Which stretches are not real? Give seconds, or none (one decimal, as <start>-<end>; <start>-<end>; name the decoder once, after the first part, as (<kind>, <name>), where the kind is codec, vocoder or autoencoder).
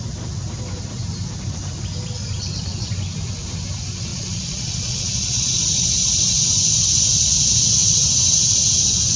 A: 4.1-5.5 (vocoder, Vocos)